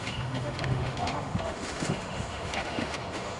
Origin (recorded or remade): remade